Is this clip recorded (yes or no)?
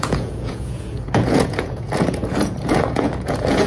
no